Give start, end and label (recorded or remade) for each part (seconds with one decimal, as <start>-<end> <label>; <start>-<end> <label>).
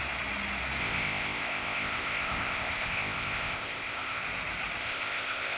0.0-0.8 recorded; 0.8-4.2 remade; 4.2-4.8 recorded; 4.8-5.6 remade